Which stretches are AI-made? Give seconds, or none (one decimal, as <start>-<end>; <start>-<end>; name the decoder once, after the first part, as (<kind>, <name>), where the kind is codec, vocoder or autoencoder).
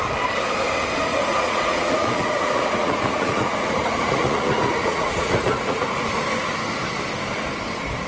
1.1-6.0 (vocoder, Vocos)